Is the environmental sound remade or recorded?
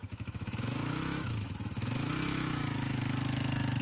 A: remade